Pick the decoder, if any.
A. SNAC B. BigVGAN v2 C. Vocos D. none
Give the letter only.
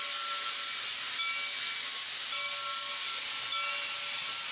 D